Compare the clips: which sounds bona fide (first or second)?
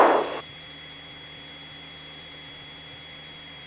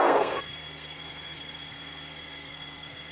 first